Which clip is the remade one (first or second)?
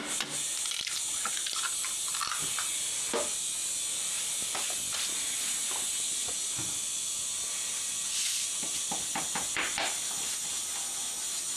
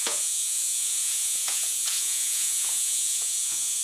second